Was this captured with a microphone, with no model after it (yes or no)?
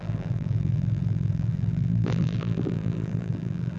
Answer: no